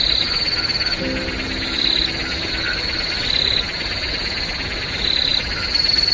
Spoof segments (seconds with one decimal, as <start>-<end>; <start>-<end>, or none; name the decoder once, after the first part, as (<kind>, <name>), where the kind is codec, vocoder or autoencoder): none